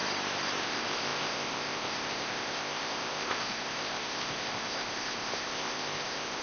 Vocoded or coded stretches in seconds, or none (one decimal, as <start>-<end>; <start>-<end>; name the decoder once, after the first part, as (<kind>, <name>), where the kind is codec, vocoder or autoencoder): 0.6-6.4 (codec, ZipCodec)